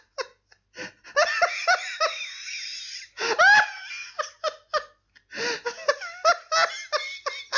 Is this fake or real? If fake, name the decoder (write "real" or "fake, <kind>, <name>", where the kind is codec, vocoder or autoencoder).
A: real